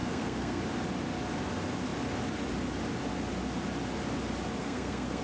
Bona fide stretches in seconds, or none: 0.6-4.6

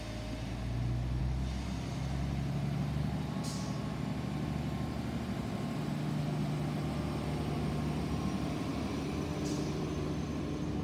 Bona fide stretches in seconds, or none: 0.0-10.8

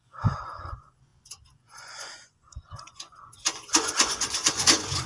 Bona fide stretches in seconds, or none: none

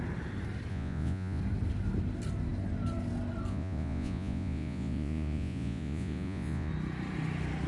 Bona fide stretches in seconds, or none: 0.0-0.7; 1.4-3.5; 6.7-7.7

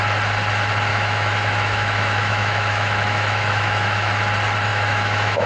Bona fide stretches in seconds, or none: 0.0-0.9; 4.2-4.7

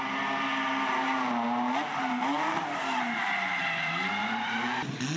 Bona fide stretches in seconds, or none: 0.0-5.2

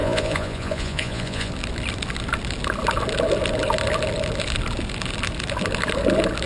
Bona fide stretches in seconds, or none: 1.5-6.5